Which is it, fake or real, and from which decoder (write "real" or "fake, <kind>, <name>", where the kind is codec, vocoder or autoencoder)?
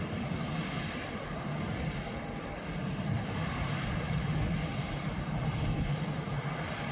fake, vocoder, BigVGAN v2